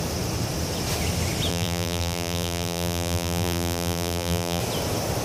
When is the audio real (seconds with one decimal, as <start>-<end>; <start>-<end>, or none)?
0.0-1.5; 4.6-5.2